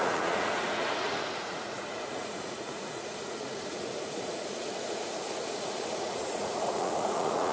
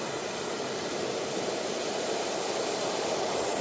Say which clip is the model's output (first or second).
first